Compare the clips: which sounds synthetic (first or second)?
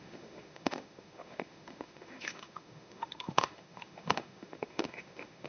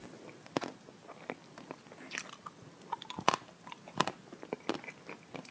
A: first